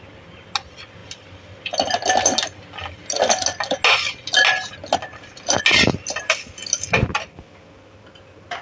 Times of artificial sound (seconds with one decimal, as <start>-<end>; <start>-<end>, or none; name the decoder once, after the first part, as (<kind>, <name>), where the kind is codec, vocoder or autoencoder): none